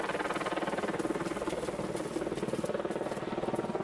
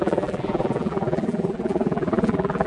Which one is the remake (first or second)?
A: second